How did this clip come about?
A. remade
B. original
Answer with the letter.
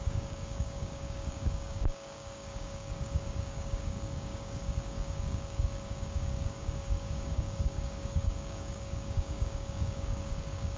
A